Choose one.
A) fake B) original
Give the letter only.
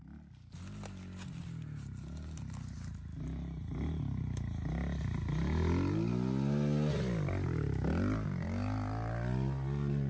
B